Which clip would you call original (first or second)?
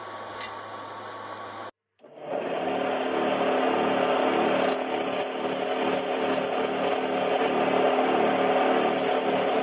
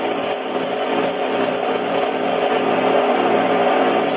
first